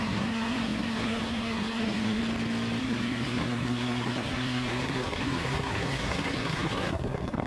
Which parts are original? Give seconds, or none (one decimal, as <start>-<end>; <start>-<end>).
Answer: 2.2-2.8